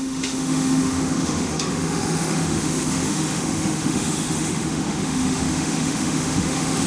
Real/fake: fake